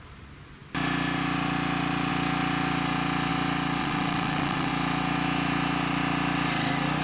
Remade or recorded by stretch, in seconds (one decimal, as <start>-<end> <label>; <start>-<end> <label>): 0.0-3.8 recorded; 3.8-4.7 remade; 4.7-7.0 recorded